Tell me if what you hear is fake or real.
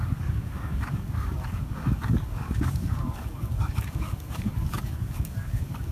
fake